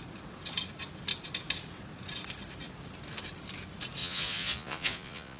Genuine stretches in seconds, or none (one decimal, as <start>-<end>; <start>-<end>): 0.0-4.0